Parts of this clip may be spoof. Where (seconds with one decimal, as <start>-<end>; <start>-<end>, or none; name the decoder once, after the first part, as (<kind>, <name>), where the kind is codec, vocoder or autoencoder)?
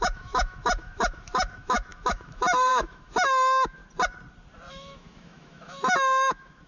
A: 0.0-3.8 (autoencoder, DAC-VAE); 4.7-6.7